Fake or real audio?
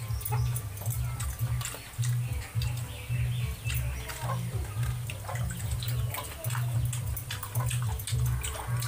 real